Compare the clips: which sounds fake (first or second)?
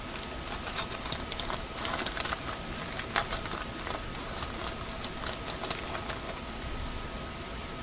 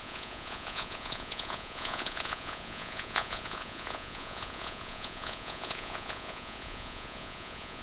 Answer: second